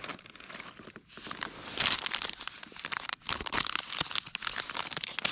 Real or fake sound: real